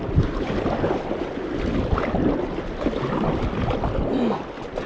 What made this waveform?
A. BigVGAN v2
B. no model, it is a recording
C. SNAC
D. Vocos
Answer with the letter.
B